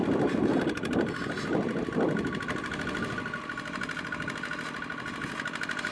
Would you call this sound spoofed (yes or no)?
no